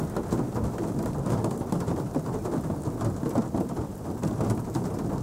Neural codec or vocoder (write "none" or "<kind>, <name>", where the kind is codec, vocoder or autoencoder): none